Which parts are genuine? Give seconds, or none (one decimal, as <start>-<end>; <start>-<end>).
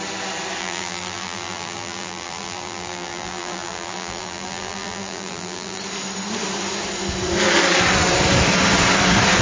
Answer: 0.0-0.6; 5.8-9.4